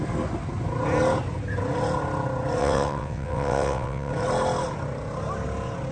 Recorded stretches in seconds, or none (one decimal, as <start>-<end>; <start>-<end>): 0.0-2.6; 4.1-5.9